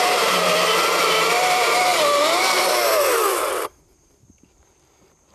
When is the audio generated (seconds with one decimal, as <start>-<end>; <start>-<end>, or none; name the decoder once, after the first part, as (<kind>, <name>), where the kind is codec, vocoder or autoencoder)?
0.0-0.5 (vocoder, BigVGAN v2); 1.0-5.3